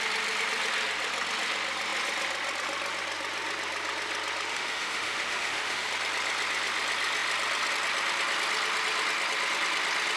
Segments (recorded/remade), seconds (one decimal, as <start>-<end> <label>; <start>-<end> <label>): 0.0-4.5 recorded; 4.5-5.9 remade; 5.9-10.2 recorded